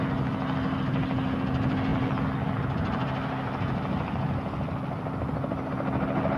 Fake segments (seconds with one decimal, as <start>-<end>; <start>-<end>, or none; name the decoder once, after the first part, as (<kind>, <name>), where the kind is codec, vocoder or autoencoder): none